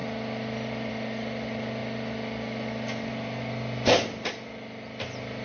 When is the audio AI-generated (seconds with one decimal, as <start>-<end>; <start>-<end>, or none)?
none